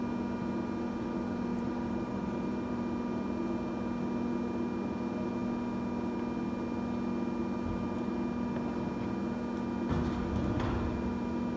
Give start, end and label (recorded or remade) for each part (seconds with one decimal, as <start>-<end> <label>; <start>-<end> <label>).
0.0-1.5 recorded; 1.5-2.8 remade; 2.8-11.6 recorded